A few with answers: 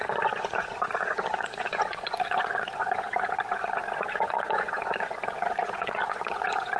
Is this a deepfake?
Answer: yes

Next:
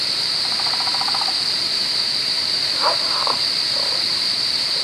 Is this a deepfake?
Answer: yes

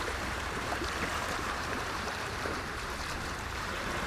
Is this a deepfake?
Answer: yes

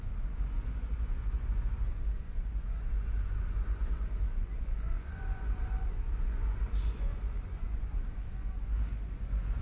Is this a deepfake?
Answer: yes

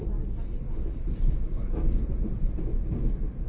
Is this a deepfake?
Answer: no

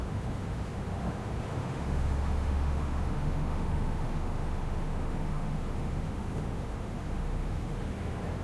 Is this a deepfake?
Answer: yes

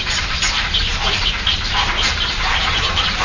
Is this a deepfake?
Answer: yes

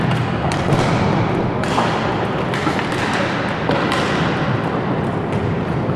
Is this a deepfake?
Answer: no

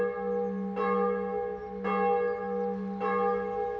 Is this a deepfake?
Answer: no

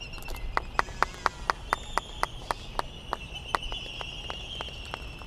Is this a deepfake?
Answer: no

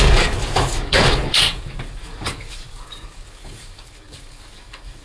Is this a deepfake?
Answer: yes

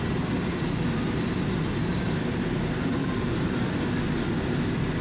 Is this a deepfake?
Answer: no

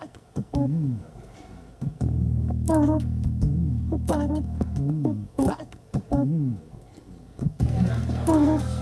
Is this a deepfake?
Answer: yes